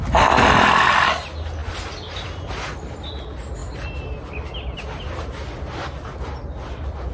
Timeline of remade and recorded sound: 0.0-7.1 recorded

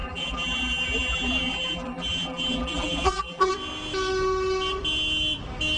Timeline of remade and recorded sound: 0.0-3.5 remade; 3.5-5.8 recorded

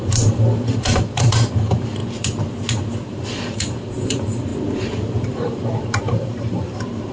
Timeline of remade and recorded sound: 0.0-2.0 remade; 2.0-3.1 recorded; 3.1-4.5 remade; 4.5-5.1 recorded; 5.1-7.1 remade

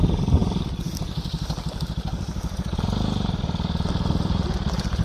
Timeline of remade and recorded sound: 0.0-5.0 recorded

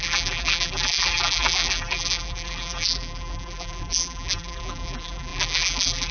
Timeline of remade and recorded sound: 0.0-6.1 remade

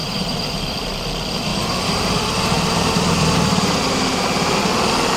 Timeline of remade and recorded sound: 0.0-0.6 remade; 0.6-1.5 recorded; 1.5-4.6 remade; 4.6-5.2 recorded